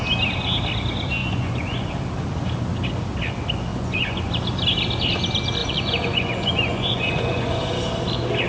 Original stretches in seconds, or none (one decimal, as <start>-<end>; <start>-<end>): 0.0-1.2; 1.9-3.7; 4.3-5.6; 7.6-8.5